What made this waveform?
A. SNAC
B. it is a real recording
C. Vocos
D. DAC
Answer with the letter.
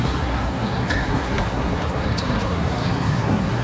A